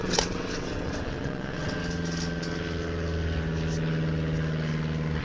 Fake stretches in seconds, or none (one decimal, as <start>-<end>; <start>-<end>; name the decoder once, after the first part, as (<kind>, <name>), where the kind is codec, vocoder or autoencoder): 0.0-1.8 (vocoder, WaveNeXt)